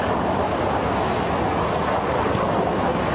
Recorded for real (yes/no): yes